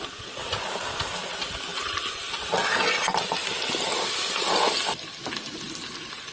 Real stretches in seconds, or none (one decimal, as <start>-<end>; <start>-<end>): 0.0-6.3

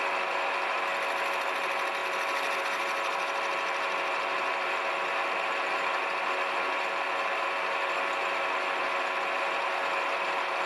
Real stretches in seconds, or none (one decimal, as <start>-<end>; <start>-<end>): 0.0-10.7

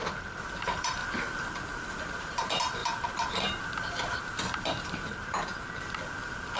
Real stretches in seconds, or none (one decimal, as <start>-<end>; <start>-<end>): 1.0-1.7; 2.8-4.2; 5.5-6.6

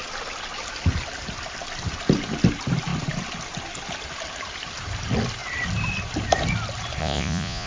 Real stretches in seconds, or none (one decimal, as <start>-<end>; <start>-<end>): 0.0-7.0

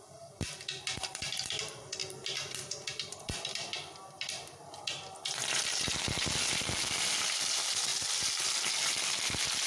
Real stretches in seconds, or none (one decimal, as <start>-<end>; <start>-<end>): 7.9-8.8

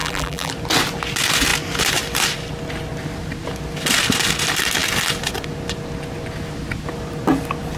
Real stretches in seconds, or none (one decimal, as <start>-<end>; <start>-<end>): 0.5-7.8

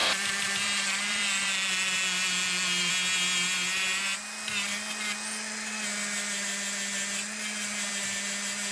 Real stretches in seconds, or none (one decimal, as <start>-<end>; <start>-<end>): 2.9-8.7

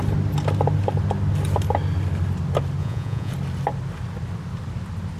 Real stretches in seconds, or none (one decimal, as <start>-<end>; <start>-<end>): 0.0-2.8; 3.3-5.2